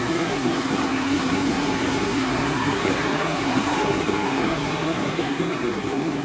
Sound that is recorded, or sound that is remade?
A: remade